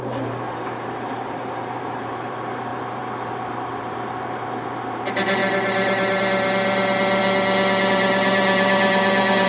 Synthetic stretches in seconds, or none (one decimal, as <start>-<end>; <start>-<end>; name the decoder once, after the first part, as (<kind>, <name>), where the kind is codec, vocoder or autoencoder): 0.0-7.2 (vocoder, BigVGAN v2); 7.9-9.5